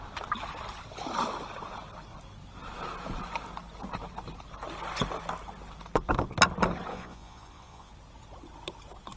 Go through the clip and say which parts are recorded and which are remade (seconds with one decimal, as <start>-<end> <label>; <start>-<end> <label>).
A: 0.0-6.9 recorded; 6.9-7.9 remade; 7.9-9.2 recorded